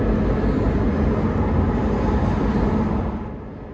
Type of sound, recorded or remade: recorded